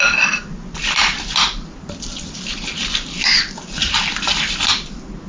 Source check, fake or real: real